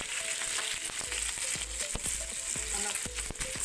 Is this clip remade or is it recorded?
recorded